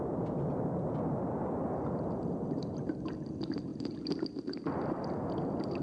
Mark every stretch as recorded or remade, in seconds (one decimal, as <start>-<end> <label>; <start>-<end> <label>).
0.0-5.8 recorded